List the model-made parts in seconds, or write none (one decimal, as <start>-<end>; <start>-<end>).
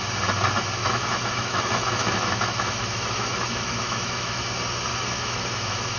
0.8-4.4; 4.9-6.0